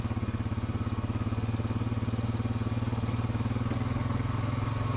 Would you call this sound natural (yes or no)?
yes